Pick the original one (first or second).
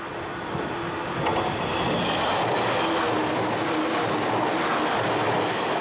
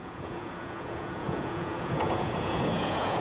first